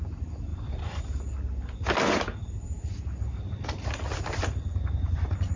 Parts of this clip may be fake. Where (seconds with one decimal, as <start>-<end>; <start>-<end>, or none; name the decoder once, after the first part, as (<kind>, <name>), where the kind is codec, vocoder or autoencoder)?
0.5-1.0 (vocoder, BigVGAN v2); 2.4-5.6